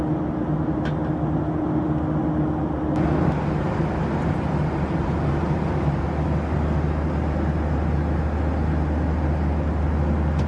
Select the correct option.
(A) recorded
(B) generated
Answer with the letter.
A